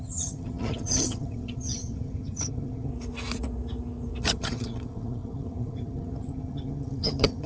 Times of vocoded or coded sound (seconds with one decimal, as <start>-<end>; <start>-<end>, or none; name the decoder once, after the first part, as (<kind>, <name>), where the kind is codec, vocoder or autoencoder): 0.0-2.9 (vocoder, HiFi-GAN); 4.2-7.5